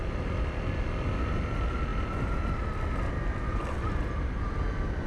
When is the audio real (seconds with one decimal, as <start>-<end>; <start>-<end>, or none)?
0.0-5.1